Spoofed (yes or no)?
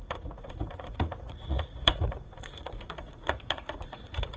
yes